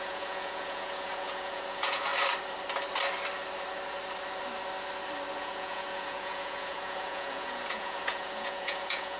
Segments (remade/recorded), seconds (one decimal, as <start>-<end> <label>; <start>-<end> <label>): 0.0-2.1 remade; 2.1-5.4 recorded; 5.4-9.2 remade